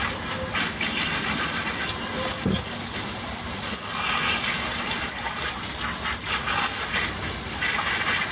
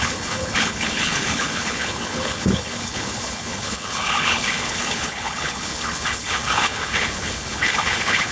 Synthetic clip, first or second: second